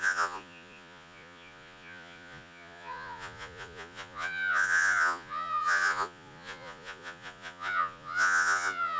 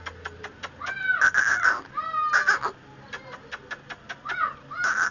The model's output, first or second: first